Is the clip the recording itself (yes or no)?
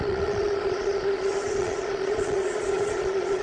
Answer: no